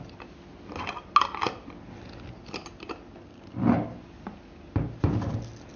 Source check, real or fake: real